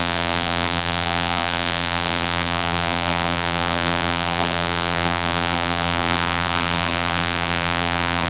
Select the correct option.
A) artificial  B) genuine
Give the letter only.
A